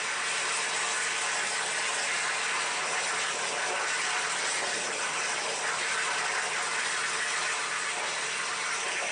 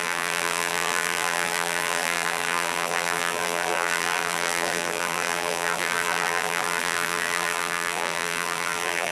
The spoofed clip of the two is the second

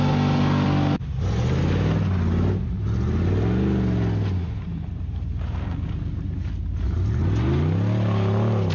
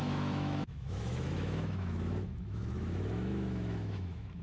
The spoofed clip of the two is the second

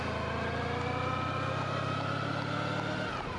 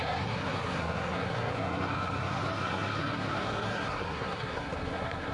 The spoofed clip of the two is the second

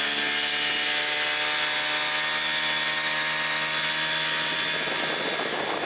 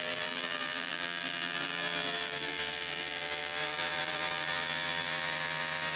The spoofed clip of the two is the second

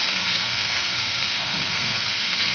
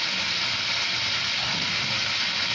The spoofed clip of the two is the first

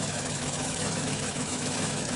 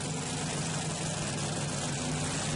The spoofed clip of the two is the first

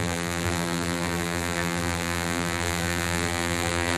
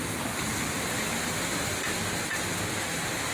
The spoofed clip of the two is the first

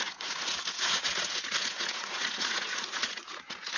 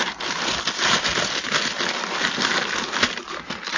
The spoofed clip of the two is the first